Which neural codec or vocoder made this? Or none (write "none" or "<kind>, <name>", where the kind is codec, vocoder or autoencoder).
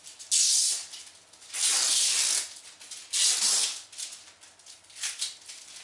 none